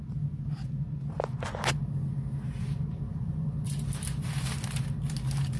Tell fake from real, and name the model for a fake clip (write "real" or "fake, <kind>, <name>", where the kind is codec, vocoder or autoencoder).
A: real